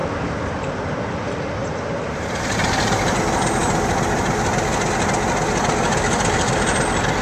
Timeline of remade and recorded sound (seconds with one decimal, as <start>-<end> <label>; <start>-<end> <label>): 0.0-0.9 remade; 0.9-1.6 recorded; 1.6-3.2 remade; 3.2-7.2 recorded